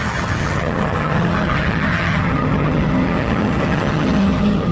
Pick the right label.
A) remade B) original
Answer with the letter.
A